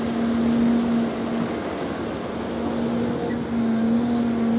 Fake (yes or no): no